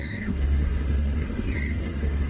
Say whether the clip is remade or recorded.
remade